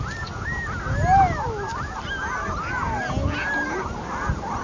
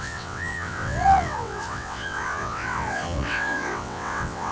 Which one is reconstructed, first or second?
second